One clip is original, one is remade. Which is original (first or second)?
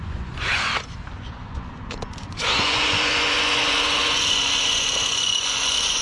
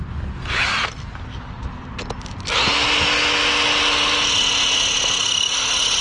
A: second